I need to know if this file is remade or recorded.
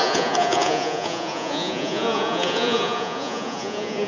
remade